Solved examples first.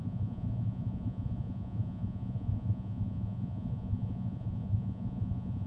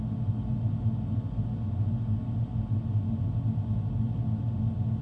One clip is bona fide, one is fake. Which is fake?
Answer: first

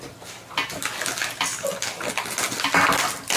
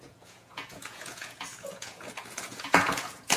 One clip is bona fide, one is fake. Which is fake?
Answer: second